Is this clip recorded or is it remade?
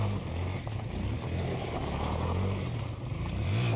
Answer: recorded